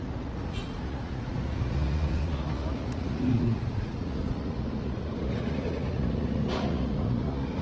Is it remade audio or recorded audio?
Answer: remade